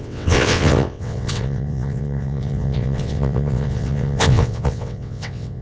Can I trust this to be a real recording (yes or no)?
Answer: no